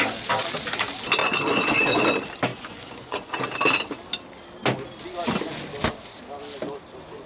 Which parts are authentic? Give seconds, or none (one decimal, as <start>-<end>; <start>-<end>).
0.0-1.2; 2.0-2.5; 3.3-7.3